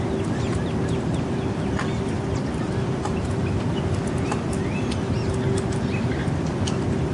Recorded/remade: recorded